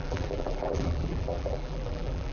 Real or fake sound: fake